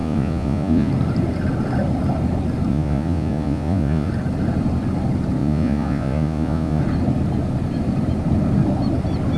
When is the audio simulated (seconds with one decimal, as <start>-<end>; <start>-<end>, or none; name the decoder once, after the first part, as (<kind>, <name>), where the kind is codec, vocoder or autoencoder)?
0.0-0.9 (vocoder, Vocos); 2.7-4.1; 5.4-6.8